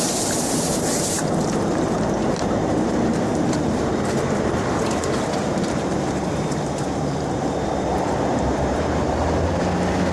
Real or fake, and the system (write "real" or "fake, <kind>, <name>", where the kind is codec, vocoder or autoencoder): fake, vocoder, BigVGAN v2